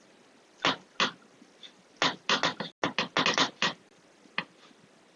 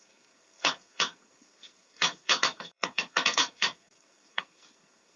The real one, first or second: first